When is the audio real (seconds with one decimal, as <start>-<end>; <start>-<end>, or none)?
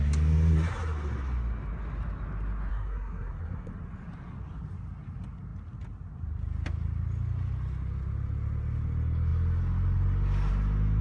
0.0-2.7; 3.7-11.0